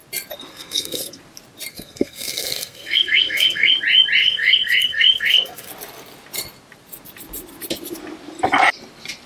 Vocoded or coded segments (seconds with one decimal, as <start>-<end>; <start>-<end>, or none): 0.5-1.2; 1.7-3.7; 4.2-5.7

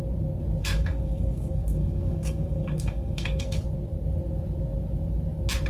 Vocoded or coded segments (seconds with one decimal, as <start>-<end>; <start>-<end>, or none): 0.6-3.6